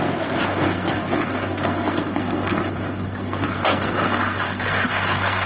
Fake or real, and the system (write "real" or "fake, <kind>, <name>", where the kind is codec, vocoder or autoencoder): fake, codec, SNAC